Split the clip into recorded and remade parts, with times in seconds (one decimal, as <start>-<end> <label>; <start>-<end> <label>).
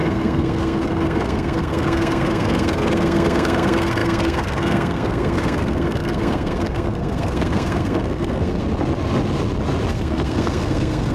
0.0-8.6 remade; 8.6-9.9 recorded; 9.9-11.1 remade